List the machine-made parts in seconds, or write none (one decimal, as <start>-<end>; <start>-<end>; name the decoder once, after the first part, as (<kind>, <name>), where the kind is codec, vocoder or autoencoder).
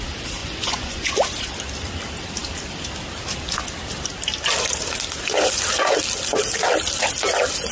0.4-1.1 (vocoder, Vocos)